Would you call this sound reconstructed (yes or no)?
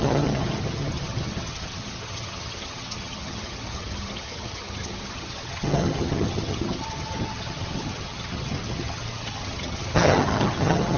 yes